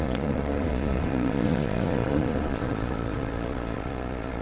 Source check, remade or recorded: remade